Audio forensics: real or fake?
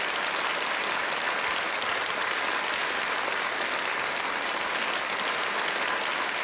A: real